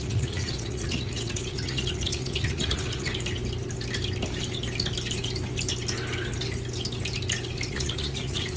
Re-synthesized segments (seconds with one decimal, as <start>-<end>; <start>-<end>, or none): 0.0-3.1; 7.7-8.6